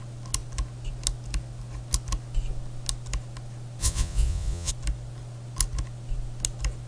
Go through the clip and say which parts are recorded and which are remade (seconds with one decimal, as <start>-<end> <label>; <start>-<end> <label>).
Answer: 0.0-3.8 recorded; 3.8-4.7 remade; 4.7-6.9 recorded